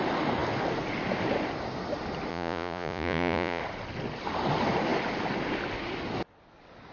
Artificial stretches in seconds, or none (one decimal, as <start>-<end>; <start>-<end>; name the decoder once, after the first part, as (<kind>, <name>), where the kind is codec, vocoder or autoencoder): 2.3-3.6 (vocoder, Vocos)